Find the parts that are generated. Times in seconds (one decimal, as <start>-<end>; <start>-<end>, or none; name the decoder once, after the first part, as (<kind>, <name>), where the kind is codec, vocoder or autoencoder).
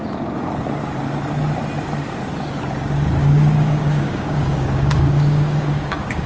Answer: 3.2-6.3 (codec, DAC)